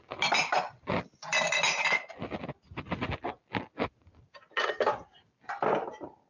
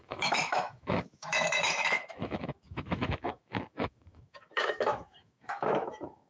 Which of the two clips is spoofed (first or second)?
second